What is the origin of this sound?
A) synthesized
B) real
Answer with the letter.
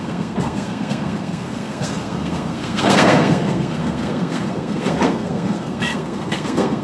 A